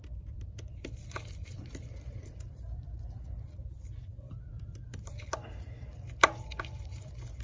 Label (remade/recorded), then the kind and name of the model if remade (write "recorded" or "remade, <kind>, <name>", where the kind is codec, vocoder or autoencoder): remade, vocoder, BigVGAN v2